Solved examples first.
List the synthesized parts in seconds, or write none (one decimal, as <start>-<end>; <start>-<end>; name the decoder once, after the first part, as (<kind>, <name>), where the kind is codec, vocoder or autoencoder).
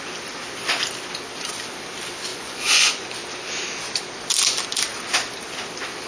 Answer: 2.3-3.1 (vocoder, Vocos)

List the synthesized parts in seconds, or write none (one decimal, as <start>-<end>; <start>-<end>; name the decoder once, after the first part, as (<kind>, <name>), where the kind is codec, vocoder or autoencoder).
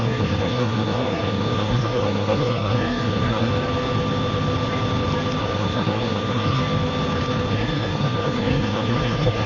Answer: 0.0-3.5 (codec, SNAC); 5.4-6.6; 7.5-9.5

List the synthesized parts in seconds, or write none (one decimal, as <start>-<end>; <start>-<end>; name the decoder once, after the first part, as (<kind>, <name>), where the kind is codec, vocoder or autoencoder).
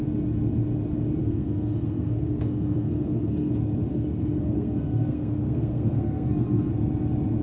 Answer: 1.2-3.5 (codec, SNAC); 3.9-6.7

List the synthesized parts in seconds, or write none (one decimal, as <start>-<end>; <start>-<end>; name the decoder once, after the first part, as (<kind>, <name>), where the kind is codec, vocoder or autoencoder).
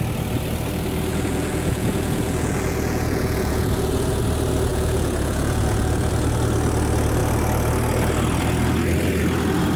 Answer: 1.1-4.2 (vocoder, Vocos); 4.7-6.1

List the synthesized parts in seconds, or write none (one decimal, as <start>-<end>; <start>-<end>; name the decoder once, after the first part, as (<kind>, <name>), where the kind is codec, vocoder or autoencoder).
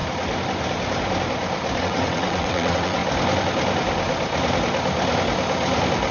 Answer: 1.8-3.0 (vocoder, WaveNeXt)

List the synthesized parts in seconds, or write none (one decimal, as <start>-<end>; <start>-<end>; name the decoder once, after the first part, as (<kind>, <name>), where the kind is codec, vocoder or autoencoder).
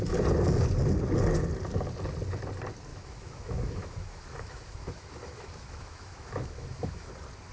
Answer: 2.9-7.1 (autoencoder, DAC-VAE)